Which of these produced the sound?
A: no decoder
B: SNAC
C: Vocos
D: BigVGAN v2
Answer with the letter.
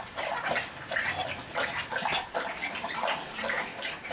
A